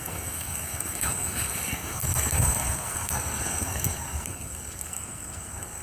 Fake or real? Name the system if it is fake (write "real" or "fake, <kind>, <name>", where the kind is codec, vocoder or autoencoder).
fake, codec, SNAC